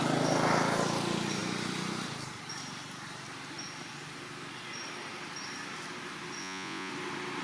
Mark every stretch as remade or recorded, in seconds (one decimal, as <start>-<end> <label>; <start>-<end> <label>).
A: 0.0-6.4 recorded; 6.4-6.9 remade; 6.9-7.4 recorded